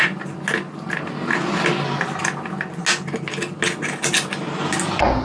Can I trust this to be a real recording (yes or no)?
yes